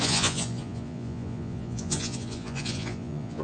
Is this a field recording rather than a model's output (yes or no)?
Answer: no